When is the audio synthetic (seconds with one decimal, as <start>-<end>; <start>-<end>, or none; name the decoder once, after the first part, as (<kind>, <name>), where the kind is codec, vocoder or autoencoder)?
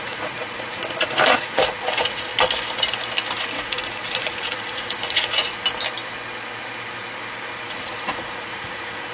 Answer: 0.0-2.3 (vocoder, Vocos); 3.4-5.5; 7.6-9.1